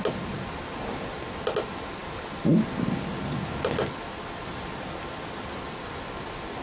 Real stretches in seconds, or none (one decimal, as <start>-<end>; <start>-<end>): 0.0-6.6